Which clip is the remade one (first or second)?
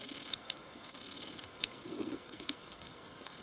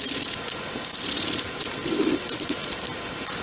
first